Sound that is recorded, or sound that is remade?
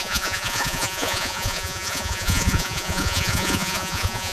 remade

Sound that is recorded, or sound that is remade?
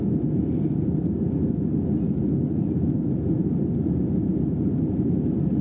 recorded